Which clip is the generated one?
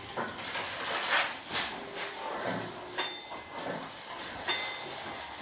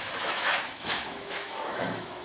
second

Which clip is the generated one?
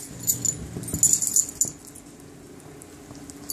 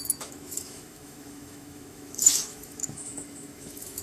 second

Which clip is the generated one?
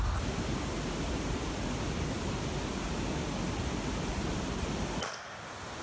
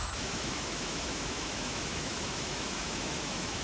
second